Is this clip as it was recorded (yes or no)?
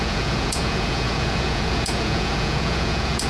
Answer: no